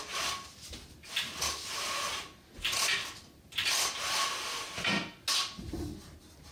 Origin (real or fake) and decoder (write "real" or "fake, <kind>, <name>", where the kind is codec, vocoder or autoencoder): real